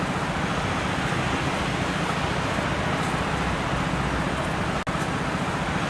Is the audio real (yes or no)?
yes